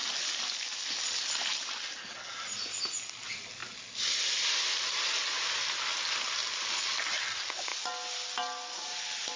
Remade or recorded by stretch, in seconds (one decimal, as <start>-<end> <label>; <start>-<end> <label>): 0.0-9.4 recorded